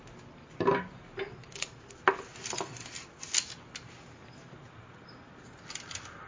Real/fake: real